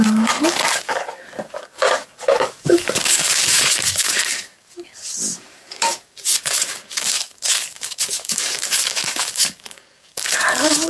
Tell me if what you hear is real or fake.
fake